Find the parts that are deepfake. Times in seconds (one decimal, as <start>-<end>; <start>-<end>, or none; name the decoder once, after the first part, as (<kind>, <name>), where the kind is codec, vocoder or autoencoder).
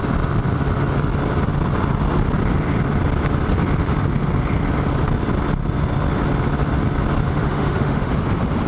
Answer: 7.3-8.1 (autoencoder, DAC-VAE)